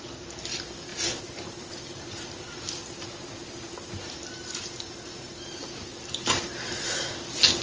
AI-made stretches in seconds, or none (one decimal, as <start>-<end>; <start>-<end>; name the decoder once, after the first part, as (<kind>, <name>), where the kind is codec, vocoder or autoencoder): none